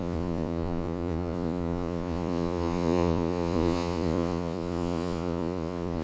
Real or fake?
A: fake